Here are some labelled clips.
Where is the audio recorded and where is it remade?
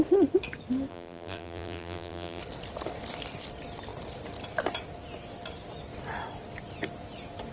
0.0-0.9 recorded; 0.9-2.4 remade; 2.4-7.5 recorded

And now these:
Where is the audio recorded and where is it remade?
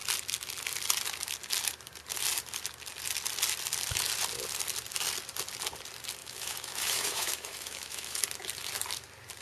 0.0-6.2 recorded; 6.2-8.2 remade; 8.2-9.4 recorded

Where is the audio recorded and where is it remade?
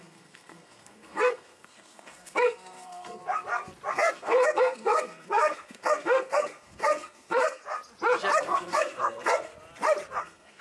0.0-3.2 remade; 3.2-3.9 recorded; 3.9-7.6 remade; 7.6-8.4 recorded; 8.4-9.5 remade; 9.5-10.2 recorded; 10.2-10.6 remade